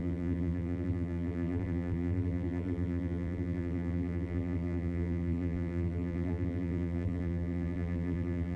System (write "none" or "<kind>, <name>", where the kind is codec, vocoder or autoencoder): vocoder, BigVGAN v2